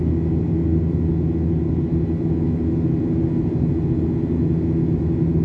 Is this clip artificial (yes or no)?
no